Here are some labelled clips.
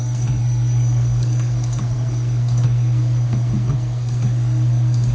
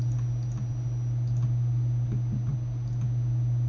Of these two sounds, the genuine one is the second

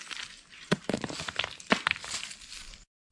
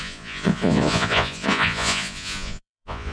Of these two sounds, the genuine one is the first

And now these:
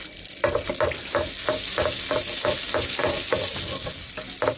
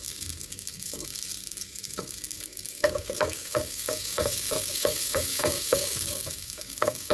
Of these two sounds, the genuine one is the first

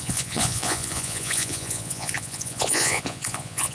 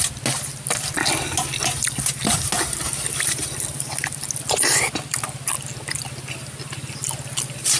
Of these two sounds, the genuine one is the second